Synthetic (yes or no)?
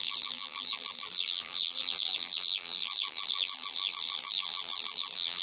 yes